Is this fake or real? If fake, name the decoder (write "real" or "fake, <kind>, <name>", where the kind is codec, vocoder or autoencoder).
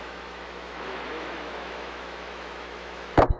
fake, autoencoder, DAC-VAE